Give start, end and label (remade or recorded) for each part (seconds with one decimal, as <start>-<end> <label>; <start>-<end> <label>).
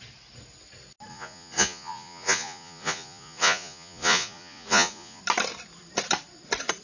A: 0.0-1.1 recorded; 1.1-5.2 remade; 5.2-6.8 recorded